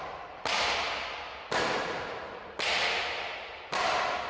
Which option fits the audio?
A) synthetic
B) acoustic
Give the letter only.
B